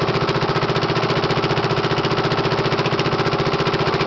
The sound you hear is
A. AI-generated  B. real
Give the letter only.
B